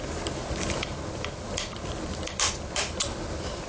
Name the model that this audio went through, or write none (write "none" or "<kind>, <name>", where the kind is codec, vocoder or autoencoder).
none